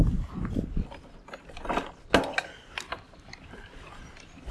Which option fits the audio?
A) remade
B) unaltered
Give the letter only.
B